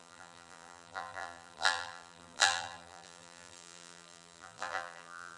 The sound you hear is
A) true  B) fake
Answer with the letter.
B